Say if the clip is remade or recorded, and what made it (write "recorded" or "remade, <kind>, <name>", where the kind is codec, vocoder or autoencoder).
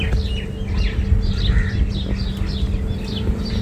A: recorded